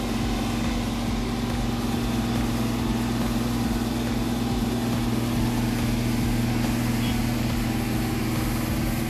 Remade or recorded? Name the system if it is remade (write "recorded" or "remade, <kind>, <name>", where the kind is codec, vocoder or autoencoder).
recorded